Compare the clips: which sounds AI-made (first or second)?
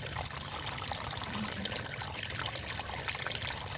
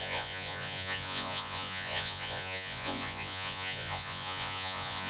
second